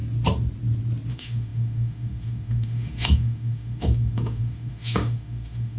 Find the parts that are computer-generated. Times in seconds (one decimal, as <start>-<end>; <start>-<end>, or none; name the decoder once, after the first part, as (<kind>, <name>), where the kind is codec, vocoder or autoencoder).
1.1-5.8 (autoencoder, DAC-VAE)

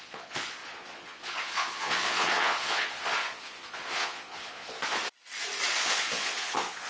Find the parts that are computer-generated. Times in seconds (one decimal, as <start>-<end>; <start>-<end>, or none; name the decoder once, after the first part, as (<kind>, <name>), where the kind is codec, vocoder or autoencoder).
0.0-5.0 (vocoder, Vocos); 5.7-6.9

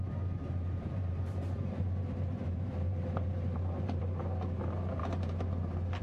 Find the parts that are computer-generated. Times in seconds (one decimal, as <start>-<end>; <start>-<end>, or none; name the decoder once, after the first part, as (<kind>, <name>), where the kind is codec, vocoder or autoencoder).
0.4-4.0 (vocoder, BigVGAN v2)

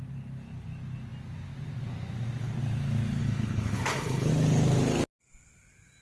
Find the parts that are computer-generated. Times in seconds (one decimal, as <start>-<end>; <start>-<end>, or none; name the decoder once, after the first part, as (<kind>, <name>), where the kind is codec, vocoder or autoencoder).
3.2-4.3 (codec, HILCodec)

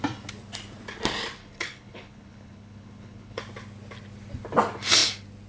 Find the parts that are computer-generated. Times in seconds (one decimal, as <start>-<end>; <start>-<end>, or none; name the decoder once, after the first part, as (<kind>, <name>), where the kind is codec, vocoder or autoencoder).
1.4-3.4 (codec, HILCodec)

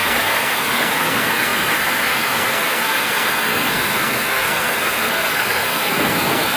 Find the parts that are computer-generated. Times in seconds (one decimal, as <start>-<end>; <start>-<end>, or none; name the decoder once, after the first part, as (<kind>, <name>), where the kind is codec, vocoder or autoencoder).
0.0-6.6 (codec, SNAC)

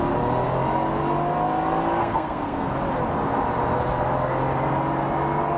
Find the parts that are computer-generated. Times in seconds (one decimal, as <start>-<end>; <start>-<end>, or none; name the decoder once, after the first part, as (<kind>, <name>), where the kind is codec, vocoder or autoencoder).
2.0-2.7 (codec, SNAC)

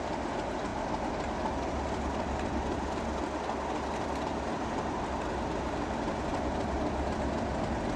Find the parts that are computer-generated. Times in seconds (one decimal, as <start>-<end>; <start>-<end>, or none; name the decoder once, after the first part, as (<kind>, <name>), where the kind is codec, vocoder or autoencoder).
none